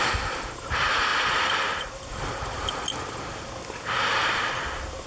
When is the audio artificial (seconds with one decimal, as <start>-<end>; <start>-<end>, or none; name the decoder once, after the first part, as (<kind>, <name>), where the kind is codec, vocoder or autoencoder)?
none